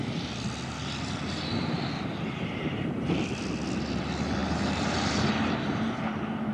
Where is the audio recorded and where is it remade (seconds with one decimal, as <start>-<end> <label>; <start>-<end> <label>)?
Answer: 0.0-4.4 recorded; 4.4-5.3 remade; 5.3-6.5 recorded